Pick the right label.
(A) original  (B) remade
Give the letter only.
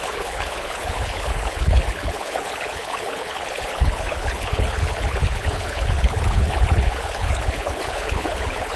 B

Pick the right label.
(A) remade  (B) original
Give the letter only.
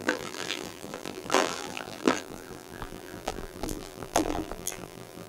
A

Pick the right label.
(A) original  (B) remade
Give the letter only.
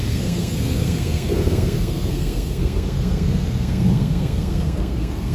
B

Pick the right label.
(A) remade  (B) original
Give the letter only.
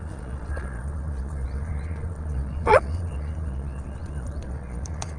A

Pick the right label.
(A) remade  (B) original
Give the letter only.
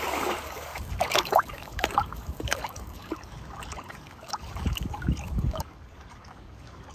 A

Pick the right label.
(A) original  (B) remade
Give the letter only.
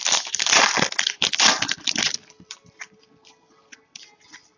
B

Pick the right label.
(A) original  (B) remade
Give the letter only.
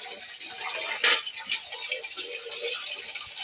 A